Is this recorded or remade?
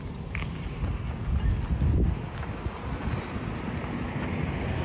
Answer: recorded